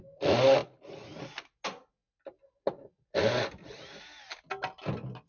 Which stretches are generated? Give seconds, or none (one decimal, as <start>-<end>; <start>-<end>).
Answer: none